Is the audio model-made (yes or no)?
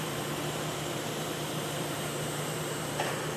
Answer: yes